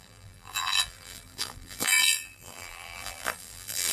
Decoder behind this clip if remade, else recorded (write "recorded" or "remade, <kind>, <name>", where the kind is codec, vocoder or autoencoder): remade, vocoder, BigVGAN v2